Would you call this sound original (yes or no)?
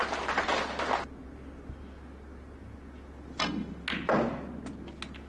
yes